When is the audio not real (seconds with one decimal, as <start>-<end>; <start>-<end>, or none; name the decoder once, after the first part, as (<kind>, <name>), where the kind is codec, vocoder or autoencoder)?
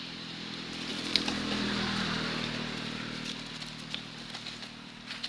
none